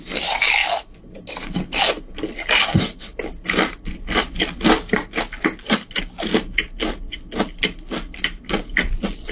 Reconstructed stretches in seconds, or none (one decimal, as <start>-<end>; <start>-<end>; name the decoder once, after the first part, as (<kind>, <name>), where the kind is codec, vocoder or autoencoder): none